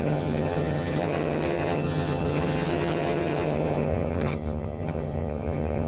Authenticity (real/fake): fake